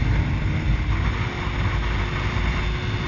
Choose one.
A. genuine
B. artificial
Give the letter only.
A